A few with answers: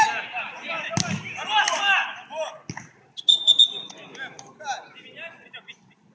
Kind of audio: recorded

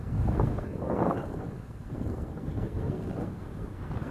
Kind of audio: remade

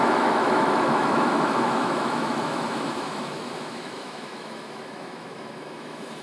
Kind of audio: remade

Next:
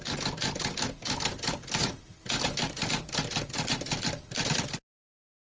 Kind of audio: recorded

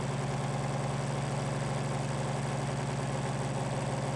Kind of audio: recorded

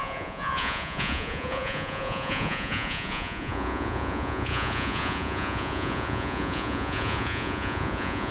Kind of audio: remade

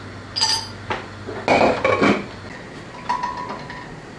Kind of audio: recorded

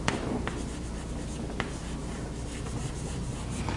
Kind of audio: remade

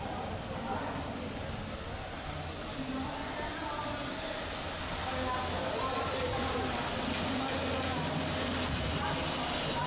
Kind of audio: recorded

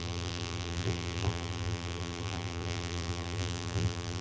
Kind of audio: remade